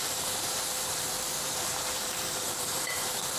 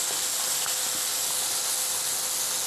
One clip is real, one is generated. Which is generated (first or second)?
first